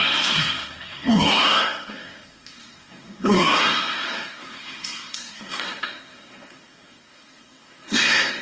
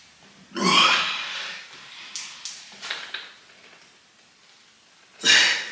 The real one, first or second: second